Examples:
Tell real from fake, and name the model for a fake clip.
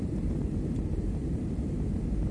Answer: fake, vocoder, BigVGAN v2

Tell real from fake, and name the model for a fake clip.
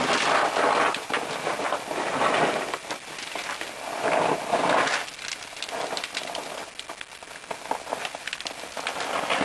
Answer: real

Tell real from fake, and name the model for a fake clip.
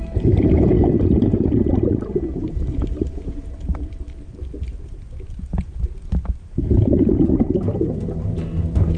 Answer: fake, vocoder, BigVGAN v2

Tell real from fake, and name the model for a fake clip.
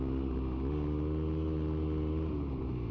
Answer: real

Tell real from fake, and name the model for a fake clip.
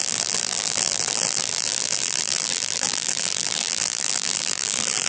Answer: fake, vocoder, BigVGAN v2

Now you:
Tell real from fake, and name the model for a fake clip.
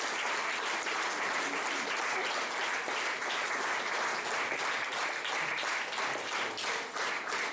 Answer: real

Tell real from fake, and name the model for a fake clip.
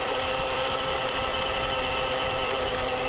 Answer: fake, vocoder, BigVGAN v2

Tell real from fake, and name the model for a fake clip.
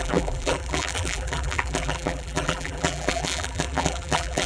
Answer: fake, vocoder, BigVGAN v2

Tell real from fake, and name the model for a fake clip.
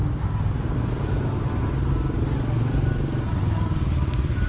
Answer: real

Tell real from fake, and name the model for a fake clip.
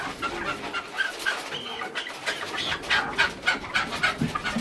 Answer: real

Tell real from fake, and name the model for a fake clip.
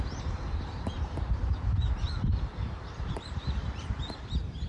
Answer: fake, vocoder, BigVGAN v2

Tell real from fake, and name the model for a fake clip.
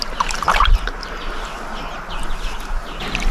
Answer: real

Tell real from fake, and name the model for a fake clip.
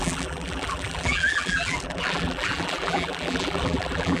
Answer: fake, vocoder, BigVGAN v2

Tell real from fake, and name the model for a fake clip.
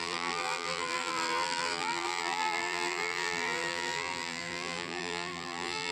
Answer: fake, vocoder, BigVGAN v2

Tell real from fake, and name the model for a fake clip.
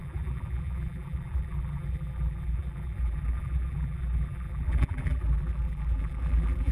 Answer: fake, vocoder, BigVGAN v2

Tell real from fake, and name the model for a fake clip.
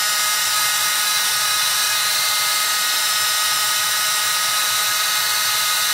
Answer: fake, vocoder, BigVGAN v2